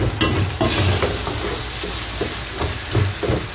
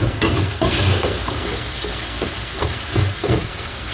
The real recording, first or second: first